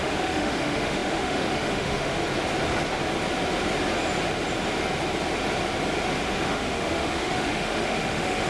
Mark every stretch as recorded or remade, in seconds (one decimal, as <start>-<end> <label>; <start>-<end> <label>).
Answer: 0.0-2.2 remade; 2.2-6.2 recorded; 6.2-8.5 remade